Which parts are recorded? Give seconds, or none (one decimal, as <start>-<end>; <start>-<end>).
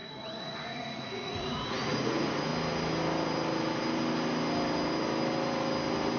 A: 2.5-6.2